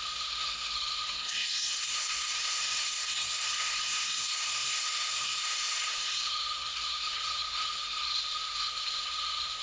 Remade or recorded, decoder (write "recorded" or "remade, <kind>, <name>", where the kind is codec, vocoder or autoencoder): remade, codec, SNAC